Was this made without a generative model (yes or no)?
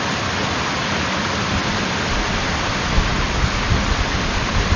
yes